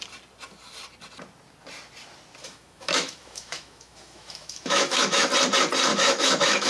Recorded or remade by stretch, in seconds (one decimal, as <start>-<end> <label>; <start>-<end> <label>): 0.0-2.4 recorded; 2.4-5.3 remade; 5.3-5.9 recorded; 5.9-6.7 remade

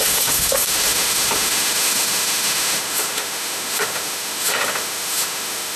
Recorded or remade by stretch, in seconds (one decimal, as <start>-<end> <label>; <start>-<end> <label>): 0.0-5.8 remade

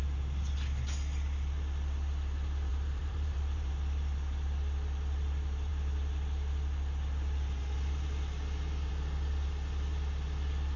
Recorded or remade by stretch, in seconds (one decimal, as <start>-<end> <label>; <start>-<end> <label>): 0.0-2.7 recorded; 2.7-3.7 remade; 3.7-10.8 recorded

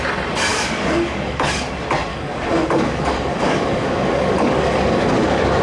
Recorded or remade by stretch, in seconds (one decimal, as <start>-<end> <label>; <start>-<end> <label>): 0.0-0.5 recorded; 0.5-1.7 remade; 1.7-2.1 recorded; 2.1-5.6 remade

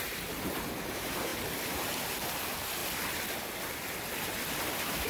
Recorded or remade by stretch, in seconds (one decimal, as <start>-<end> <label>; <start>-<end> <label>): 0.0-2.8 remade; 2.8-5.1 recorded

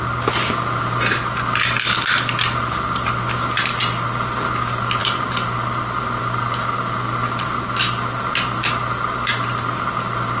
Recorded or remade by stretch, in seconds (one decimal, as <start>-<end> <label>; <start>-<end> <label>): 0.0-10.4 recorded

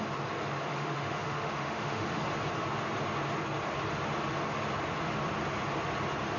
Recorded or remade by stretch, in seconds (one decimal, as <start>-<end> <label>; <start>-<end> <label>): 0.0-0.7 recorded; 0.7-2.2 remade; 2.2-6.4 recorded